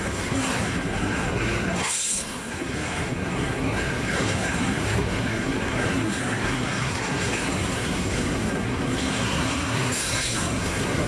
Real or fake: fake